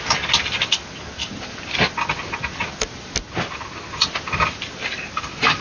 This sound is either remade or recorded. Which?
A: recorded